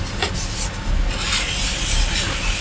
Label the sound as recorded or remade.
recorded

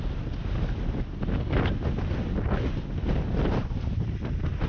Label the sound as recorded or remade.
recorded